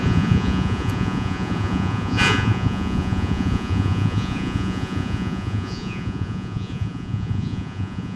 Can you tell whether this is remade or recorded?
remade